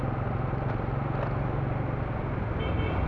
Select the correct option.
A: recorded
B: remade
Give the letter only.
A